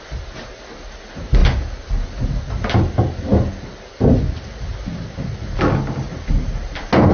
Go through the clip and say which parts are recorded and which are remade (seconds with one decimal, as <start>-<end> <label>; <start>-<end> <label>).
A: 0.0-7.1 recorded

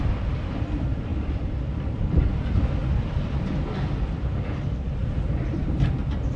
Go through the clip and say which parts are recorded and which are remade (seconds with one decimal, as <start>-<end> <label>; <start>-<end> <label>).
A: 0.0-1.1 recorded; 1.1-2.2 remade; 2.2-5.0 recorded; 5.0-6.0 remade; 6.0-6.4 recorded

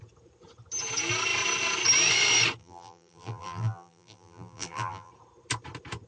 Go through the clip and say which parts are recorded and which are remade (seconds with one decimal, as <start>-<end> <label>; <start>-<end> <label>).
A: 0.0-2.6 recorded; 2.6-5.1 remade; 5.1-6.1 recorded

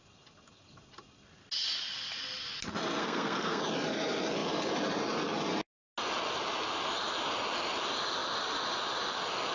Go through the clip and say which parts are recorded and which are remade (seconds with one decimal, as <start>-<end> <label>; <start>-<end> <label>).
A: 0.0-3.0 recorded; 3.0-3.6 remade; 3.6-9.5 recorded

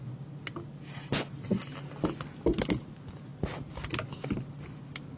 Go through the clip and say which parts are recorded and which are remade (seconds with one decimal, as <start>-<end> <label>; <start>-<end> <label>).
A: 0.0-5.2 recorded